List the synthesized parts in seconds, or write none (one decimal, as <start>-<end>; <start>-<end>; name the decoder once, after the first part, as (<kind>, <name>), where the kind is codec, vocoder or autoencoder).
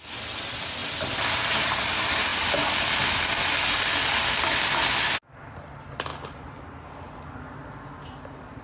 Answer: none